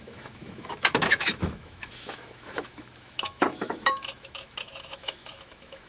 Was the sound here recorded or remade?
remade